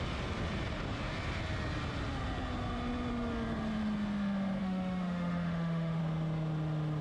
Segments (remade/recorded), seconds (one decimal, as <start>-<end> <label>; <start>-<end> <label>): 0.0-4.6 recorded; 4.6-6.0 remade; 6.0-7.0 recorded